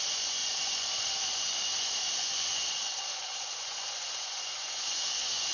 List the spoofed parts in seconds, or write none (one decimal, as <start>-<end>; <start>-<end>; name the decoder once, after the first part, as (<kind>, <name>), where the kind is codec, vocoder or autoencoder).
0.0-5.5 (vocoder, Vocos)